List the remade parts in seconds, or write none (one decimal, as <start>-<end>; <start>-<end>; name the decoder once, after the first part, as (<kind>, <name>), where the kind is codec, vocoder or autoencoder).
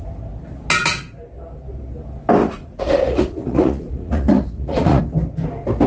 2.4-5.0 (vocoder, Vocos)